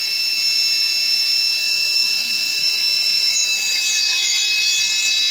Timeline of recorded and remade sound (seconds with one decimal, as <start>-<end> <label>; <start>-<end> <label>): 0.0-1.6 recorded; 1.6-4.8 remade; 4.8-5.3 recorded